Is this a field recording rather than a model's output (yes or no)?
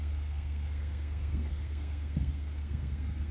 no